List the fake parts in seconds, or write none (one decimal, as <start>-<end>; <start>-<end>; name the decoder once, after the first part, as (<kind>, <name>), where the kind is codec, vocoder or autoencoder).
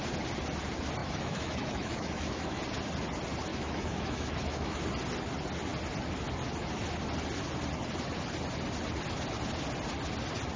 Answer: 1.0-2.6 (autoencoder, DAC-VAE); 3.5-4.8